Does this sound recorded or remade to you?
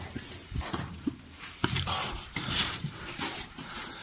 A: remade